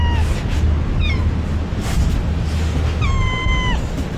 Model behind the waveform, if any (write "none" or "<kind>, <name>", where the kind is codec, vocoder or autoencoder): none